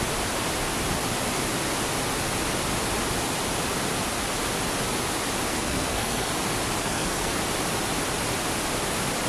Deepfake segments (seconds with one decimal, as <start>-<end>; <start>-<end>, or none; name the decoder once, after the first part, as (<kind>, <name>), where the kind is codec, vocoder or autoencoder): 5.5-6.3 (codec, SNAC); 6.8-7.4

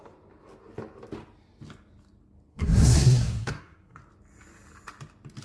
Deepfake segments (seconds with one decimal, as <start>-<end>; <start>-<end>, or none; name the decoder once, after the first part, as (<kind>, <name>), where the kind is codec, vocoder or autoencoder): 2.5-4.0 (codec, SNAC)

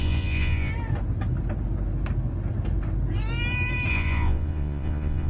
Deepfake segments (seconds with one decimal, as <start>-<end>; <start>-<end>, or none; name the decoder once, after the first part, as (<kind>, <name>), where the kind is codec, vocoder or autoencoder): 0.0-0.7 (vocoder, Vocos); 3.9-5.3